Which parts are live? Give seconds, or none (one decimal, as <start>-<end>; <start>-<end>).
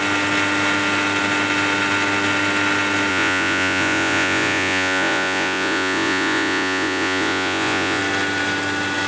0.0-3.1; 8.0-9.1